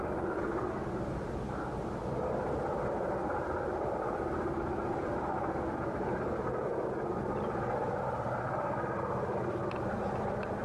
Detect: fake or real fake